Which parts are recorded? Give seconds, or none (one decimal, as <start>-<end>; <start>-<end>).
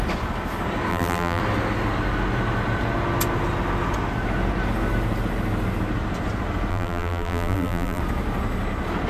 0.0-0.9; 1.4-6.7; 8.0-9.1